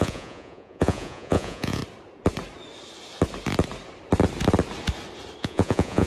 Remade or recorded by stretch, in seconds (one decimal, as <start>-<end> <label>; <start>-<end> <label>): 0.0-1.8 remade; 1.8-5.4 recorded; 5.4-6.1 remade